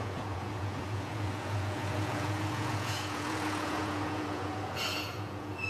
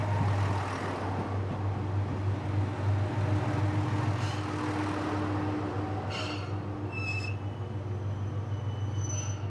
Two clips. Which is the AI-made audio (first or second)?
first